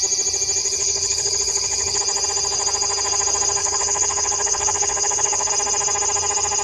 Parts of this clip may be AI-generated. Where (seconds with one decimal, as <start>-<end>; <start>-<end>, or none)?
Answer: 0.6-2.0; 3.6-5.5